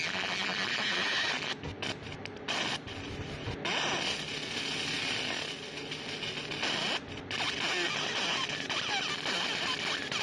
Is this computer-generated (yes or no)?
no